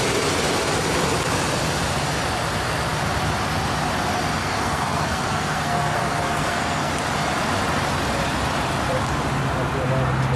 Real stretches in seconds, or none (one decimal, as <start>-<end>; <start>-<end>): 0.0-4.4; 6.9-10.4